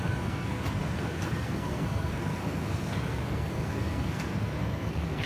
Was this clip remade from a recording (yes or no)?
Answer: yes